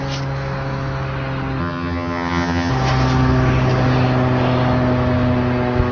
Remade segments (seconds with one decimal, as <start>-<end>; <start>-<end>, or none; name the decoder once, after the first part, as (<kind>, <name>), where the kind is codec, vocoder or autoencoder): 1.6-2.7 (vocoder, HiFi-GAN)